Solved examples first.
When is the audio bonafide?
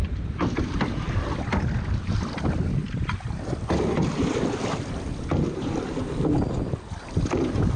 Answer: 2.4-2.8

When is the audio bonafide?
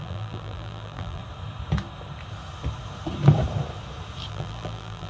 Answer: 1.2-4.3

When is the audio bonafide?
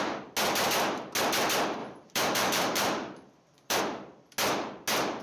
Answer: 0.0-1.8; 3.8-5.2